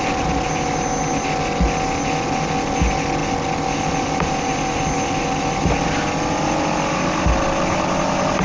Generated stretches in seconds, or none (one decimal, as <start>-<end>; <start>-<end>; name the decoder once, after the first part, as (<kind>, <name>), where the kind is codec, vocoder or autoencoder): none